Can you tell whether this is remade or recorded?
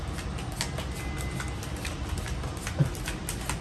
recorded